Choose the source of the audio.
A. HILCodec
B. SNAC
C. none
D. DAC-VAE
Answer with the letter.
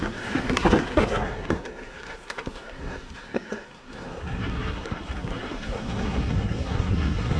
B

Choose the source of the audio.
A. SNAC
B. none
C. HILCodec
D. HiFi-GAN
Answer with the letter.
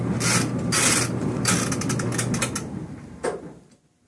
B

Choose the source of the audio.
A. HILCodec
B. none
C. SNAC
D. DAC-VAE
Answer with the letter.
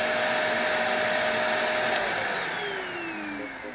B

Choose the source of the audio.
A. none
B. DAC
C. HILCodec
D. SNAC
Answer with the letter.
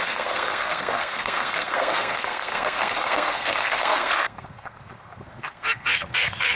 D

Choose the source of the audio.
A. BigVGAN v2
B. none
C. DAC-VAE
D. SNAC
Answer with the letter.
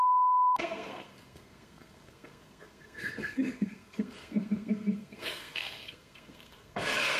D